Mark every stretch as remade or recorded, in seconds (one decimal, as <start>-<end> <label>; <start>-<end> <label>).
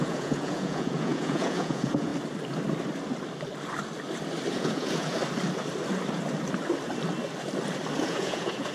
0.0-2.1 remade; 2.1-4.5 recorded; 4.5-5.2 remade; 5.2-8.0 recorded; 8.0-8.7 remade